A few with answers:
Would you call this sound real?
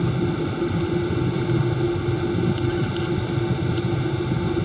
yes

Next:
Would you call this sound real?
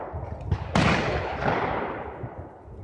yes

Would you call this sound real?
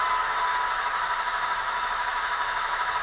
no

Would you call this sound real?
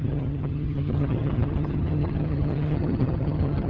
no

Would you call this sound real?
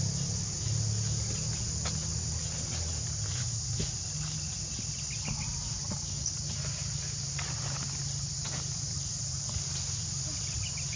yes